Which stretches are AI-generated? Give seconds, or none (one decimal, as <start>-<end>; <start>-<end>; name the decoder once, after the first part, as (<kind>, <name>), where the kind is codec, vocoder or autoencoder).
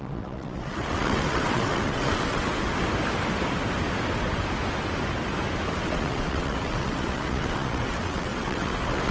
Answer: 0.0-2.5 (vocoder, WaveNeXt); 5.8-9.1